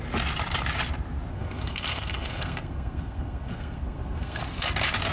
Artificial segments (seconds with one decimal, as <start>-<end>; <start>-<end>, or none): 1.3-4.4